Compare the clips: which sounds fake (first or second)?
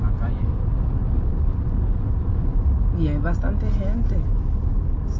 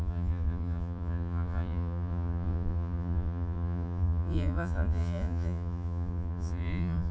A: second